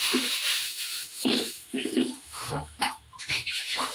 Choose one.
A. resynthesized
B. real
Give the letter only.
A